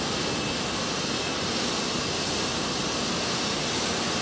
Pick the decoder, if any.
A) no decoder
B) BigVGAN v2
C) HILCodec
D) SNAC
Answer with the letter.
A